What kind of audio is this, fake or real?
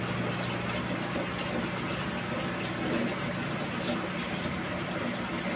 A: real